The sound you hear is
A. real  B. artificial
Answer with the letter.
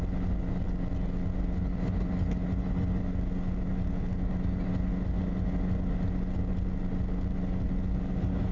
A